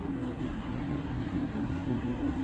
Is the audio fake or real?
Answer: fake